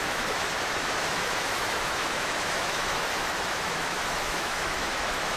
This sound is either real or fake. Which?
fake